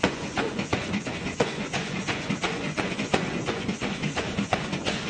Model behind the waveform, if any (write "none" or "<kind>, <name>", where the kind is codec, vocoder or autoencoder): vocoder, Vocos